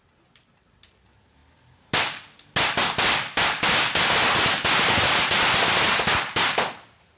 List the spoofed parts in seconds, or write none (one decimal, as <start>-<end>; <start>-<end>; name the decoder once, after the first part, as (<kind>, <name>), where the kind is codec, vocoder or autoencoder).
none